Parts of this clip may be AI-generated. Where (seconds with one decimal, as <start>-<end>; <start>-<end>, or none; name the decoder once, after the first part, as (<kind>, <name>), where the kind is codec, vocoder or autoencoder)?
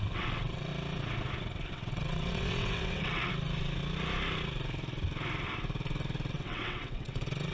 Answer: 0.0-0.7 (vocoder, WaveNeXt); 1.7-3.3; 6.3-7.5